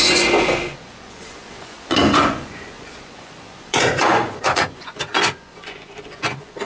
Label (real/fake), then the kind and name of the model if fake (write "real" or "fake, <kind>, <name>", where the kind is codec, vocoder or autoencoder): fake, vocoder, Vocos